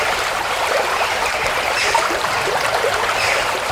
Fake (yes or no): yes